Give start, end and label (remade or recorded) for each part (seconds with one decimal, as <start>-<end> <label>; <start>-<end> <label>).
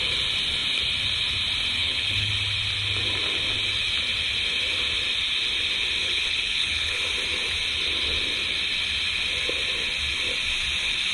0.0-1.8 recorded; 1.8-2.3 remade; 2.3-6.0 recorded; 6.0-7.0 remade; 7.0-11.1 recorded